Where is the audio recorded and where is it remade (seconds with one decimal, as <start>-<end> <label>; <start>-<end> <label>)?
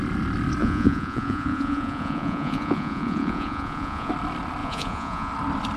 0.0-0.6 recorded; 0.6-4.1 remade; 4.1-4.6 recorded; 4.6-5.3 remade; 5.3-5.8 recorded